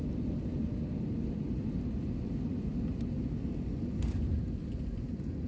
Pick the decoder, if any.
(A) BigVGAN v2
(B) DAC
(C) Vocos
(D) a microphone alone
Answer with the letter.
D